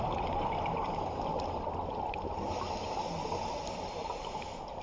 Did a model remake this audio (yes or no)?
no